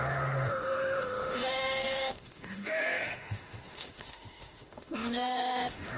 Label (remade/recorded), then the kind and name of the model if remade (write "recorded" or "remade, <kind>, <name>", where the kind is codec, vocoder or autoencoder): remade, autoencoder, DAC-VAE